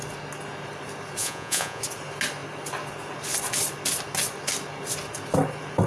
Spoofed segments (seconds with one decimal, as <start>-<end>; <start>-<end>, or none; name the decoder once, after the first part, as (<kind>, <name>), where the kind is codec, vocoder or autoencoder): 1.2-1.8 (vocoder, Vocos)